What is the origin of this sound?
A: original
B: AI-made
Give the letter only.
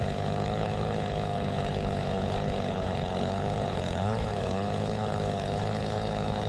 B